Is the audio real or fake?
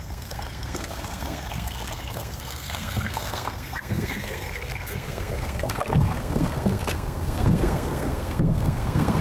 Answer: fake